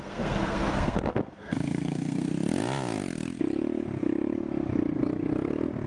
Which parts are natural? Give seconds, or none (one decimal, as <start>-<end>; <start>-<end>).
2.3-5.9